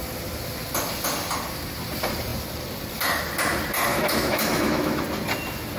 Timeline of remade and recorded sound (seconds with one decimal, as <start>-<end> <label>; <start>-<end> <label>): 0.0-3.9 recorded; 3.9-5.0 remade; 5.0-5.8 recorded